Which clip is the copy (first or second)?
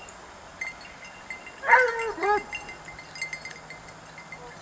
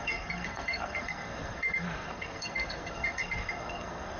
second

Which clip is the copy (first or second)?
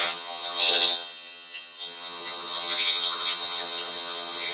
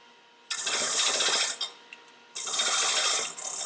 first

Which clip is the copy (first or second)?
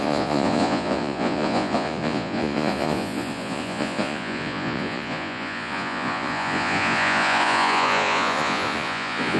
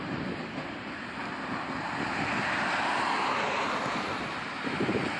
first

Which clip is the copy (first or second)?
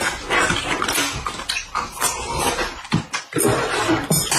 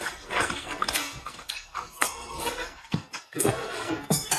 second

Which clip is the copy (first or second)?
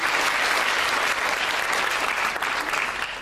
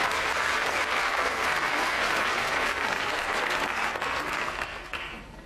second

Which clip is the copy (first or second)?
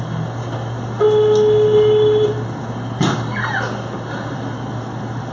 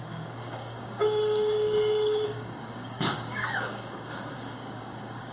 second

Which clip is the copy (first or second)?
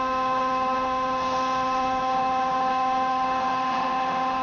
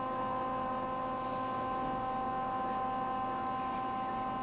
first